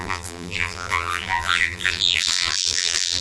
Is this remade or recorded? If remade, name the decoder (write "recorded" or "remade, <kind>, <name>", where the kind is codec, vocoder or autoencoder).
remade, vocoder, BigVGAN v2